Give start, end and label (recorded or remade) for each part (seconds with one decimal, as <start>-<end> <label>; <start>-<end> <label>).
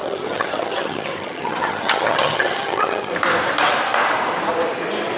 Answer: 0.0-3.1 remade; 3.1-5.2 recorded